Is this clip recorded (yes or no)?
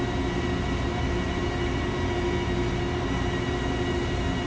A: yes